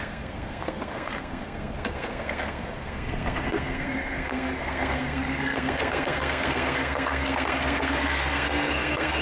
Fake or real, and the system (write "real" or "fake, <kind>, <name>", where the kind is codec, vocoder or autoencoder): fake, codec, SNAC